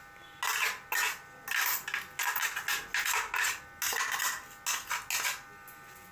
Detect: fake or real real